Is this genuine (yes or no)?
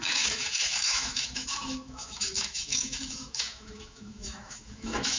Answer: no